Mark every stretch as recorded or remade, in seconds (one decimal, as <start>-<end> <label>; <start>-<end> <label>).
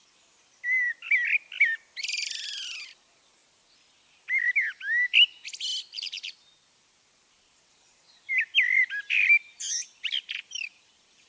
0.0-3.4 remade; 3.4-6.7 recorded; 6.7-11.3 remade